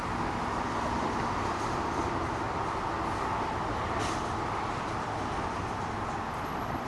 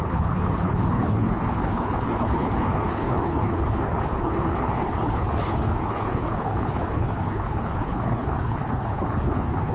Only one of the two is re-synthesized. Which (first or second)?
second